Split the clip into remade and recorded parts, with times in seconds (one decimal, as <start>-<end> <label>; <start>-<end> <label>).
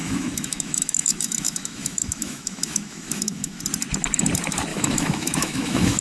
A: 0.0-3.6 remade; 3.6-4.7 recorded; 4.7-6.0 remade